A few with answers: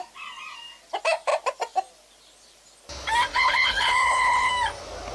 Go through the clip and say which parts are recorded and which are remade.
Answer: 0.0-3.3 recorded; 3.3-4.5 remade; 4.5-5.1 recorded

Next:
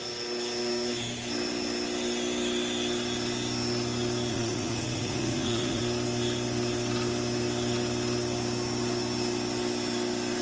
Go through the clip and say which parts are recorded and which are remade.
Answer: 0.0-4.3 recorded; 4.3-5.8 remade; 5.8-10.4 recorded

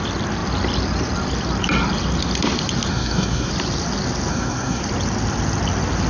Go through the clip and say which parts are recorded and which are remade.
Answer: 0.0-2.9 recorded; 2.9-3.5 remade; 3.5-4.3 recorded; 4.3-4.8 remade; 4.8-6.1 recorded

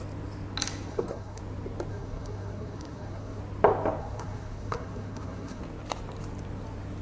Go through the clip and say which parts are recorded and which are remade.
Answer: 0.0-0.9 recorded; 0.9-1.4 remade; 1.4-1.9 recorded; 1.9-3.4 remade; 3.4-4.0 recorded; 4.0-5.6 remade; 5.6-7.0 recorded

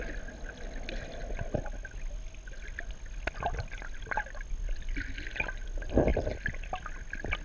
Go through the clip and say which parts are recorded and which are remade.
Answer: 0.0-7.4 recorded